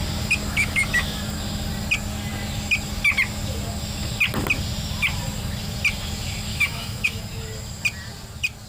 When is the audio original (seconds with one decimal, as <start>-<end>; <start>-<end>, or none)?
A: 0.0-0.5; 1.2-6.5; 7.2-8.7